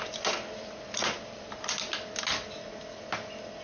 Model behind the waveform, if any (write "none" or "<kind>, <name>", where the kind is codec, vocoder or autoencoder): none